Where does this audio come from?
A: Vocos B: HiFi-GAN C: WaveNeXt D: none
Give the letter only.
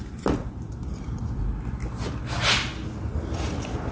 D